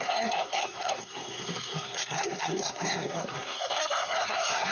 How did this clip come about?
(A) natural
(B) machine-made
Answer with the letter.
B